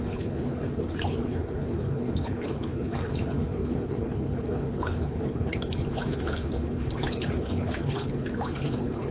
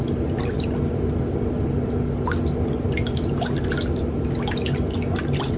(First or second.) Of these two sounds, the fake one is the first